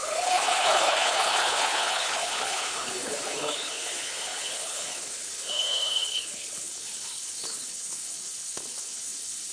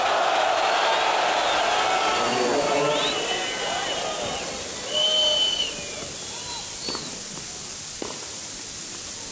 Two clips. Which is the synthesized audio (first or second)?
first